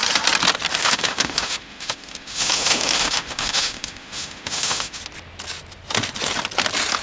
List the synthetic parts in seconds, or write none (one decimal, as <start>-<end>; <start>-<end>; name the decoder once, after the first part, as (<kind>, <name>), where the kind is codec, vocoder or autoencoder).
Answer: 0.8-5.0 (autoencoder, DAC-VAE)